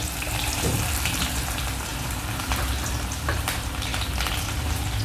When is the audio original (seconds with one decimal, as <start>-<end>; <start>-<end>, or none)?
3.9-4.6